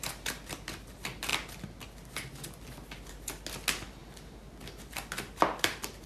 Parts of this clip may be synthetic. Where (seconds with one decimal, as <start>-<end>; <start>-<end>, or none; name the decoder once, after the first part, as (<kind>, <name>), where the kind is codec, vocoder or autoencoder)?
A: none

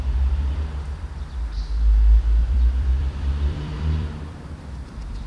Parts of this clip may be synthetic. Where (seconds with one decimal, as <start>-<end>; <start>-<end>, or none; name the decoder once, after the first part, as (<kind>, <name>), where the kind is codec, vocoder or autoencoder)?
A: 2.4-5.3 (vocoder, BigVGAN v2)

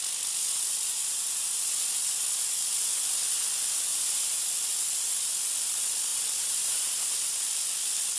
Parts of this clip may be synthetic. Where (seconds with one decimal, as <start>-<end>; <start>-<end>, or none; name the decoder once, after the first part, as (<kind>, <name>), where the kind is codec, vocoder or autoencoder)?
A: 0.9-1.7 (vocoder, BigVGAN v2); 3.9-4.4; 6.1-7.5

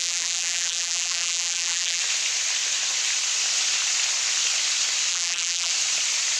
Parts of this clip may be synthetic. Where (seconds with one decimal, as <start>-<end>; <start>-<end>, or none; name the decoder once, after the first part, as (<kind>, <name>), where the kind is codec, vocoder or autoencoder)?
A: 0.0-2.0 (vocoder, BigVGAN v2); 5.1-5.7

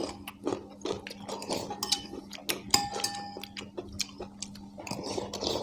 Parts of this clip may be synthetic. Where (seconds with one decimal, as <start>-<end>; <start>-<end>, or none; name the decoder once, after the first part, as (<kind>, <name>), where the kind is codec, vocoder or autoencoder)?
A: 1.4-2.2 (vocoder, BigVGAN v2)